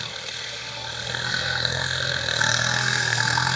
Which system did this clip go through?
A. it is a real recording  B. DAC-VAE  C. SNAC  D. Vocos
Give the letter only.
C